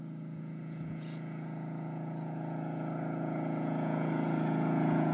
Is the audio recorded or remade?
remade